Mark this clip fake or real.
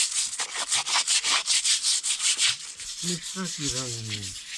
real